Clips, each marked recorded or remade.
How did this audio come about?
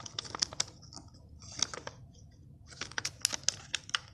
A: recorded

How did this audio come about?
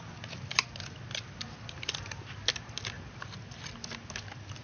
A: recorded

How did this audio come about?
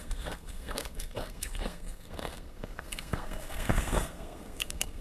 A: remade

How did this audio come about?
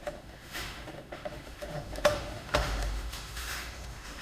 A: remade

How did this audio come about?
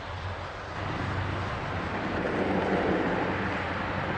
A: recorded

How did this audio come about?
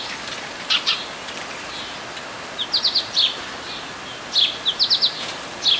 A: recorded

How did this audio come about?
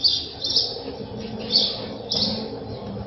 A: recorded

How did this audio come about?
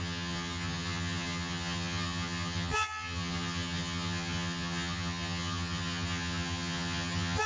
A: remade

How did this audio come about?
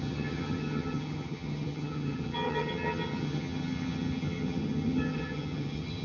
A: remade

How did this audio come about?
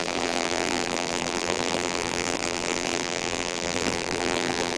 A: remade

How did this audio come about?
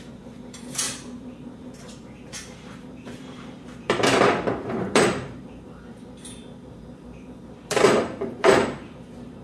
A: remade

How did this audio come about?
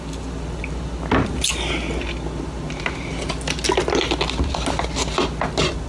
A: recorded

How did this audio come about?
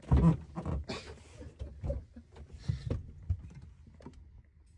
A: recorded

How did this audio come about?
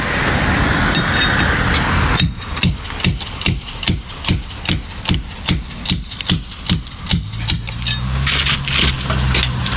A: recorded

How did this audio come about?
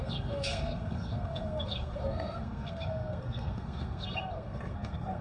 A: remade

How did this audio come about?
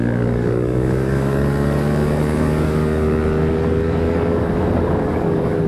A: remade